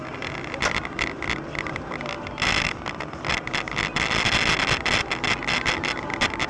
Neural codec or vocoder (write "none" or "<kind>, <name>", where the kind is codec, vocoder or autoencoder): none